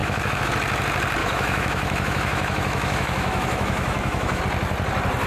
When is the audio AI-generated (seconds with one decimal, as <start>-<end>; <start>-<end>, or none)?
0.0-0.5; 1.2-4.4